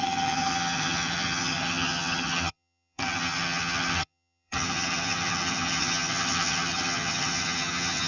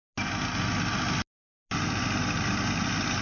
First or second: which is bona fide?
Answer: second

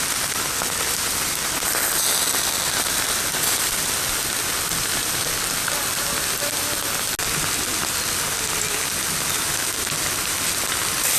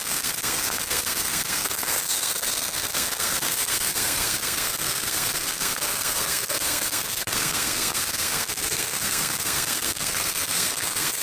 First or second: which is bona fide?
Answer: first